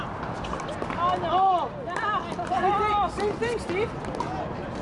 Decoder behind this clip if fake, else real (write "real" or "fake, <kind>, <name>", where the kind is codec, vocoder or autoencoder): real